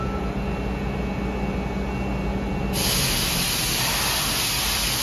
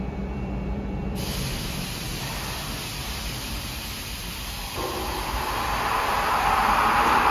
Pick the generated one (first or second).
second